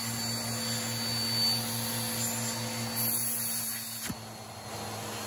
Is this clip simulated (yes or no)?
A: no